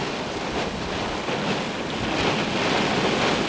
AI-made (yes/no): no